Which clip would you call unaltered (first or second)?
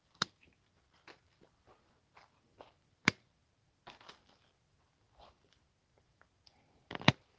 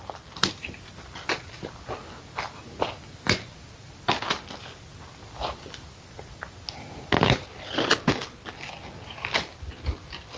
second